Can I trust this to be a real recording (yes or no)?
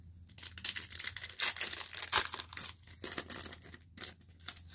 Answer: yes